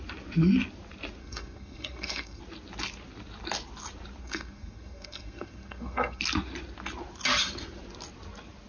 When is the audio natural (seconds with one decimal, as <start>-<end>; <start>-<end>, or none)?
0.0-1.2; 2.4-4.2; 6.2-8.7